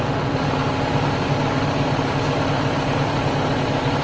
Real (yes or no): yes